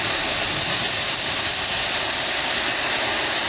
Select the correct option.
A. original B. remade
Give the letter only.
A